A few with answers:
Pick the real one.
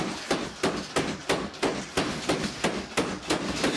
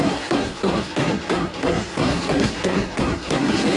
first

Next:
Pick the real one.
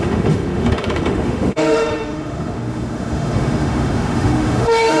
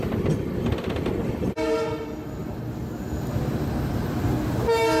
second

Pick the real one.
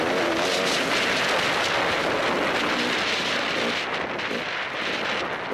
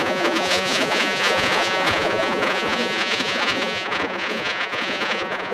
first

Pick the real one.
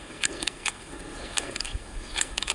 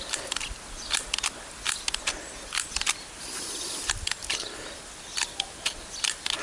second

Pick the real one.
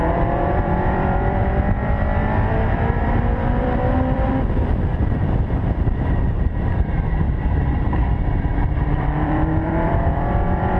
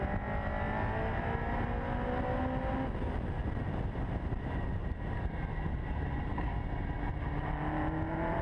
second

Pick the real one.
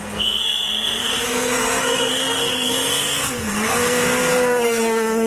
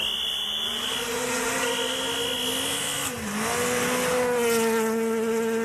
second